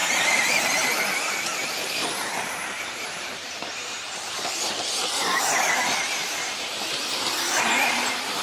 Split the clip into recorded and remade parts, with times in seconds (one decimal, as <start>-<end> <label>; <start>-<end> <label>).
0.0-4.7 remade; 4.7-6.2 recorded; 6.2-6.8 remade; 6.8-8.4 recorded